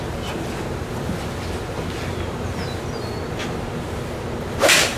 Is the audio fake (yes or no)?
no